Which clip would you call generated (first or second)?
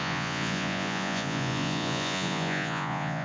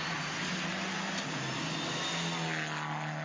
first